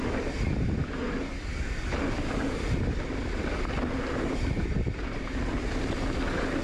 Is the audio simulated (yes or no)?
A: no